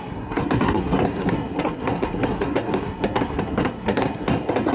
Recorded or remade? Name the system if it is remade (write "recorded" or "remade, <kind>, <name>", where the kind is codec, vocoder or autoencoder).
remade, codec, SNAC